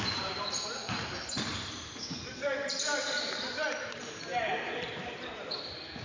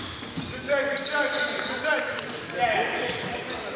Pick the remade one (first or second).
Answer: first